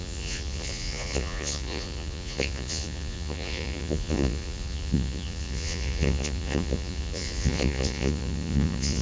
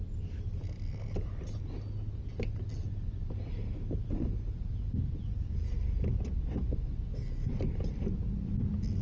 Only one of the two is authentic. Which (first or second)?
second